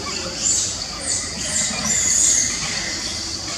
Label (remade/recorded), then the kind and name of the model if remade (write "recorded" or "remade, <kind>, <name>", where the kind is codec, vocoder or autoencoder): recorded